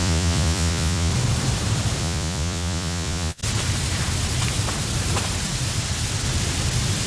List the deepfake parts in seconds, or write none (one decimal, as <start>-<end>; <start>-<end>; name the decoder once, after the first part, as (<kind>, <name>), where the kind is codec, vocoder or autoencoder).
0.0-1.1 (vocoder, Vocos); 2.0-3.4